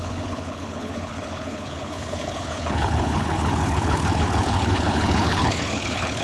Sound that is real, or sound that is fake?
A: fake